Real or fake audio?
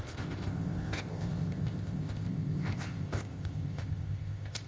fake